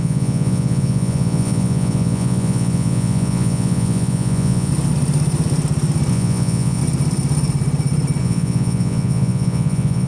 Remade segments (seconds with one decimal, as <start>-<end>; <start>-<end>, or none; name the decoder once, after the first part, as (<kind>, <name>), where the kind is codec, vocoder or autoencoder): 0.0-4.7 (vocoder, Vocos); 6.1-6.8; 8.2-10.1